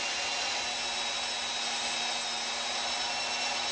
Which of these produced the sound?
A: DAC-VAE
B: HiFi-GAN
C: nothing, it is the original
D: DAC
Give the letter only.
C